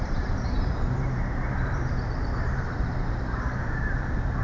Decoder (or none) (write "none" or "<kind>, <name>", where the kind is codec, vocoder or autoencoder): vocoder, BigVGAN v2